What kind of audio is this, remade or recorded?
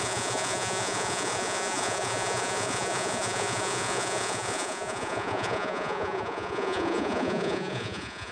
remade